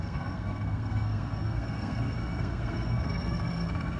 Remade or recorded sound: remade